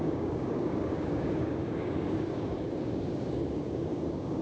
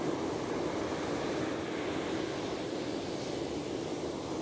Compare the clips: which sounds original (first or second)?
second